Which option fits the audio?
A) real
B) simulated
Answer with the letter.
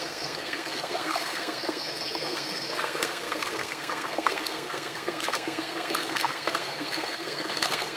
B